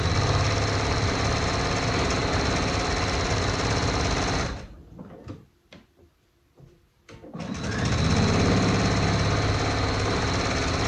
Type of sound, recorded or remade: recorded